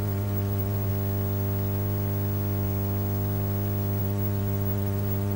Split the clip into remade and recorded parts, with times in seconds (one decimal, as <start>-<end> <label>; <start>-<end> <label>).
0.0-0.9 remade; 0.9-4.0 recorded; 4.0-5.4 remade